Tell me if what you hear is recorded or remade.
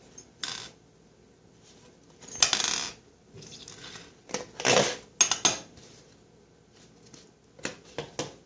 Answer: recorded